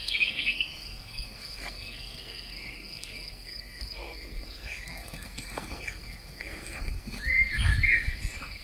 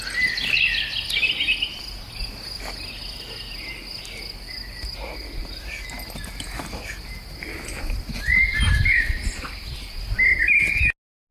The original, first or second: second